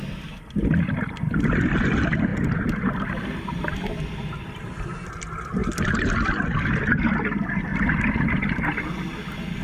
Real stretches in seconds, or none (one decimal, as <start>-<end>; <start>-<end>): 0.0-9.6